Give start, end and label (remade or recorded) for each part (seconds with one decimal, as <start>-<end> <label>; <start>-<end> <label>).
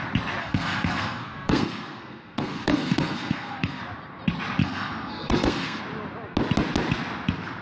0.0-0.4 recorded; 0.4-3.8 remade; 3.8-4.6 recorded; 4.6-5.8 remade; 5.8-7.6 recorded